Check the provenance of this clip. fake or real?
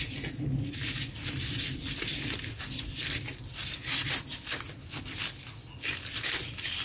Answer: real